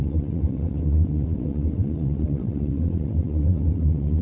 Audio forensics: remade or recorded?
remade